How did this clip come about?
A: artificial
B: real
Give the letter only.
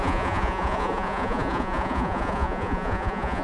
A